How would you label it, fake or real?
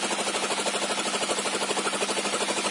real